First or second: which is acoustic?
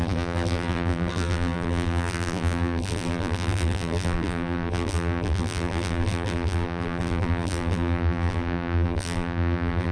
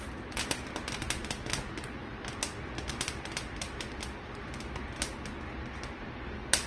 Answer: second